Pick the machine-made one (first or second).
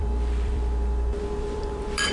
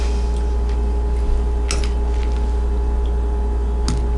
first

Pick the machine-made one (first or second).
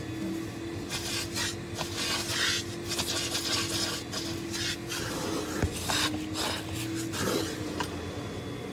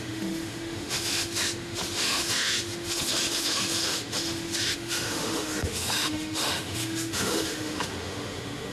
second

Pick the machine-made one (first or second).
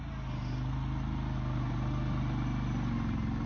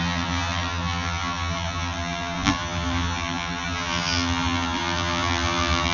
second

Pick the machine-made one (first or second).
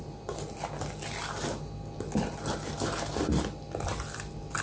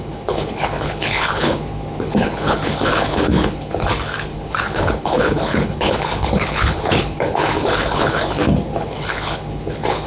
second